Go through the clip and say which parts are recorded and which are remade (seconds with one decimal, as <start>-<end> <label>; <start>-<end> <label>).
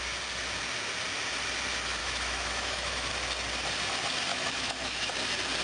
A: 0.0-2.0 recorded; 2.0-3.1 remade; 3.1-4.3 recorded; 4.3-5.1 remade; 5.1-5.6 recorded